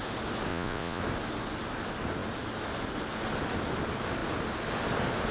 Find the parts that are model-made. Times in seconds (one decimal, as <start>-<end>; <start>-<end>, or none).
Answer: 0.5-1.0